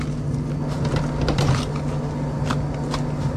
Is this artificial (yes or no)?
no